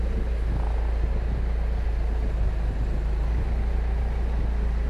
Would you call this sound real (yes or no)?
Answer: yes